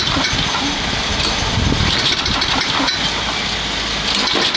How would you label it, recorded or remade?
recorded